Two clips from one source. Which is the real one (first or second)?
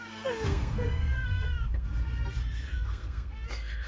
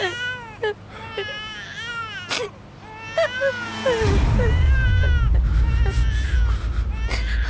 second